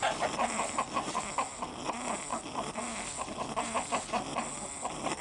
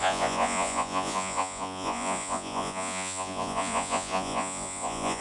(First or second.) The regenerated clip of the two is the second